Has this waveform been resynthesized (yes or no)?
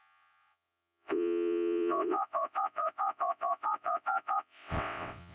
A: yes